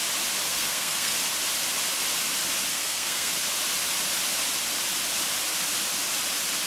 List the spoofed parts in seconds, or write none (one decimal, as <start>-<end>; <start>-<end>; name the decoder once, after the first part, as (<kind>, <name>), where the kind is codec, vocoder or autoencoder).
0.5-1.1 (codec, SNAC); 2.7-3.3